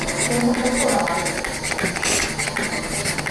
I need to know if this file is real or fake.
real